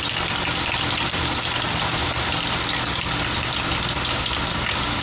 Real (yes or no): yes